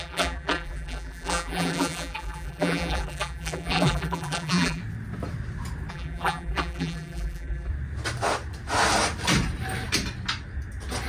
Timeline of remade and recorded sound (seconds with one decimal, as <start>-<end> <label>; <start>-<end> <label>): 0.0-4.8 remade; 4.8-5.9 recorded; 5.9-7.7 remade; 7.7-11.1 recorded